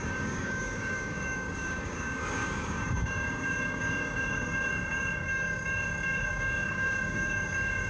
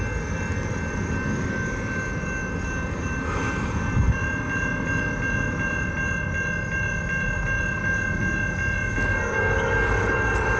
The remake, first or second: first